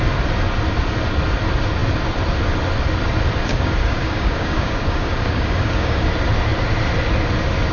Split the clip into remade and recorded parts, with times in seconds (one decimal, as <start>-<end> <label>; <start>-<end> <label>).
0.0-3.4 recorded; 3.4-6.1 remade; 6.1-7.7 recorded